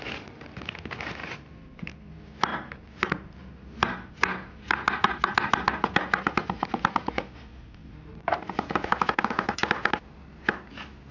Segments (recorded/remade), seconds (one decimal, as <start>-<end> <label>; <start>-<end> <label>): 0.0-1.2 recorded; 1.2-1.9 remade; 1.9-2.5 recorded; 2.5-4.1 remade; 4.1-7.8 recorded; 7.8-8.6 remade; 8.6-11.1 recorded